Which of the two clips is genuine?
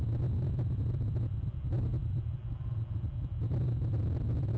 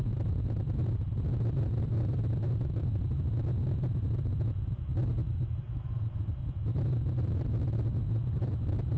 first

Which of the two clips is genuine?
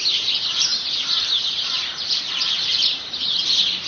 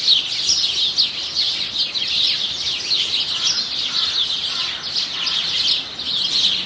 second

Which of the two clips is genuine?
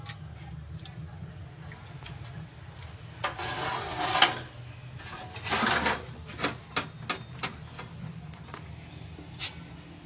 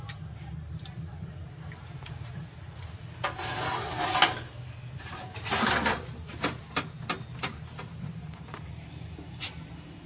first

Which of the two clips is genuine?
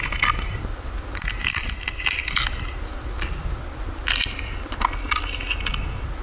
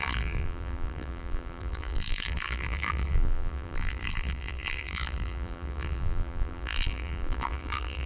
first